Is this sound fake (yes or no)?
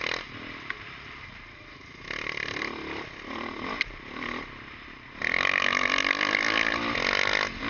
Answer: no